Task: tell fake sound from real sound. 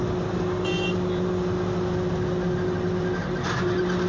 real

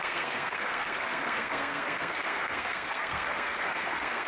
fake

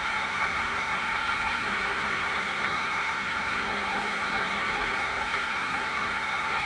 fake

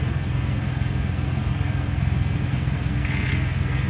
fake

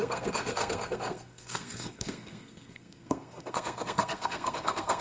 fake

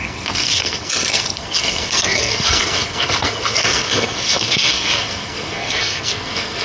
fake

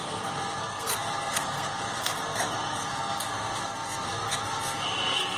fake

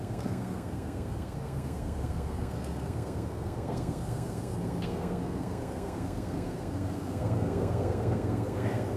fake